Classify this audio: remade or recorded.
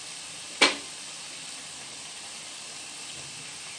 recorded